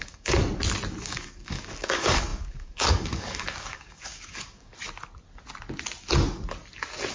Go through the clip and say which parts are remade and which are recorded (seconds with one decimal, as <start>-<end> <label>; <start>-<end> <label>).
0.0-0.4 remade; 0.4-1.0 recorded; 1.0-4.7 remade; 4.7-7.1 recorded